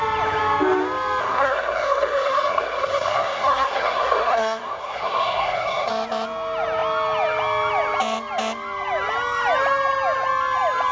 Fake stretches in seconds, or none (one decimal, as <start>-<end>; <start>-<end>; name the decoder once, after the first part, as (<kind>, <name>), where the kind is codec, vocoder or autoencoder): 1.2-5.9 (codec, SNAC)